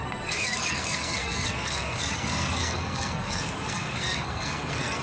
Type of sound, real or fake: fake